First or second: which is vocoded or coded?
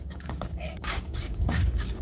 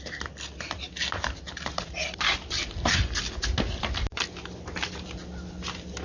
first